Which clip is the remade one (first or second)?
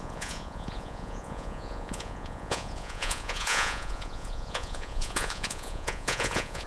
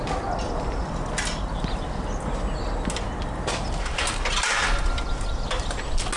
first